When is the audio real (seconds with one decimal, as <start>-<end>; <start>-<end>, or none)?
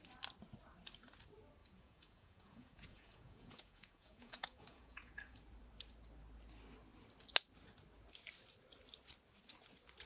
0.0-1.6; 5.4-10.1